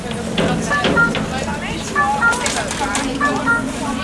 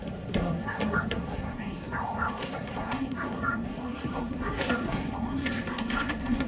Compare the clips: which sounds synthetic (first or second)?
second